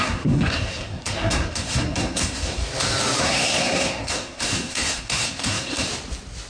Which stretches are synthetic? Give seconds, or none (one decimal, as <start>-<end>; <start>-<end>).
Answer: 0.0-2.6; 3.2-5.9